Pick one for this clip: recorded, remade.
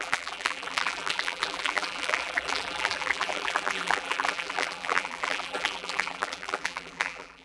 remade